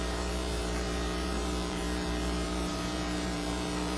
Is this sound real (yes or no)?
no